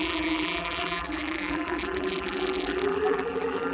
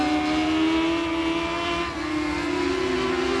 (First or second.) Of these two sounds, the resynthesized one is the first